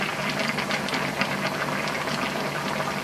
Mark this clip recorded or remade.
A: recorded